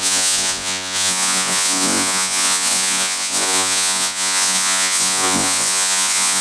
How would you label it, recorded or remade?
remade